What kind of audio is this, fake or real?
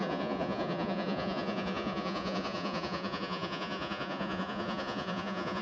fake